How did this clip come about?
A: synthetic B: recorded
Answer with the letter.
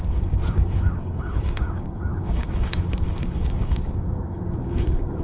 A